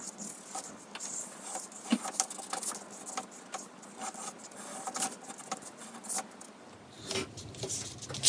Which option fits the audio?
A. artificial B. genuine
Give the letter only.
B